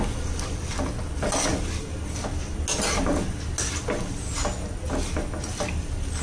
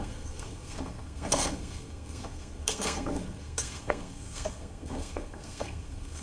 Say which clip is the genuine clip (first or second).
first